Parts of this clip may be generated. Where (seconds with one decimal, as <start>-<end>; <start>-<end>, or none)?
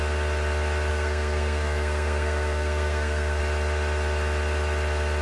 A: 0.9-3.4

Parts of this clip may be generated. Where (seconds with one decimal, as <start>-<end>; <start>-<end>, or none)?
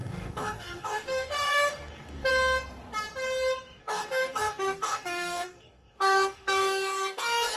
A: 0.0-2.3; 3.8-7.6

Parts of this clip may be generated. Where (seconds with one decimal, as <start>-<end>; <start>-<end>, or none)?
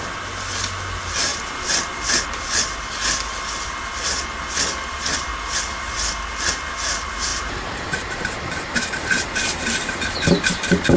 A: 7.3-9.9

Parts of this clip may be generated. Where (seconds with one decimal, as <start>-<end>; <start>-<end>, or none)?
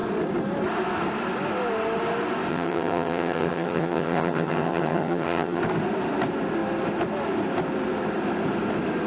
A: 2.5-5.6